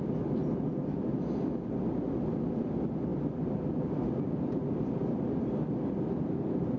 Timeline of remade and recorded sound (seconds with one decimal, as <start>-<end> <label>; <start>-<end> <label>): 0.0-6.8 recorded